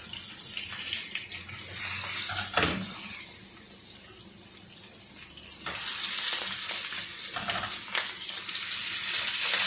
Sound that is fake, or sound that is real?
real